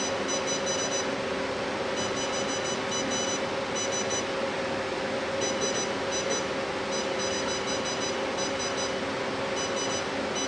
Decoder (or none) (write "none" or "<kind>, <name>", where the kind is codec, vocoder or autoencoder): none